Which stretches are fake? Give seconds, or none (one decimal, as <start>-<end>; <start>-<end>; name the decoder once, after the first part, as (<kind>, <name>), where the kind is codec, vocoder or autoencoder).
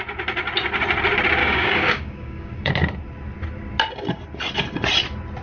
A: 1.4-2.7 (codec, DAC)